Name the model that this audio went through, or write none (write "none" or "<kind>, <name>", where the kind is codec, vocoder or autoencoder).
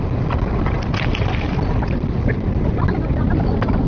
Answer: none